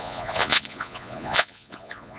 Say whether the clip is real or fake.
fake